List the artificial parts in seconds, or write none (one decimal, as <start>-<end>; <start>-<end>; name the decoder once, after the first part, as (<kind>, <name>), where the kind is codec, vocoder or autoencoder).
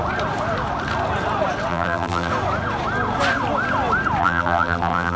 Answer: 1.7-2.3 (vocoder, BigVGAN v2); 4.2-5.2